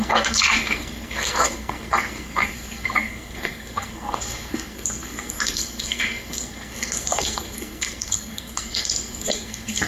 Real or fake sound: fake